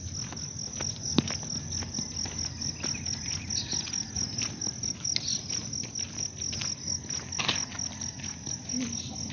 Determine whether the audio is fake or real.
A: real